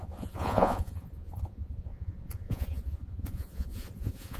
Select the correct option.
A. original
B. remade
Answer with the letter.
B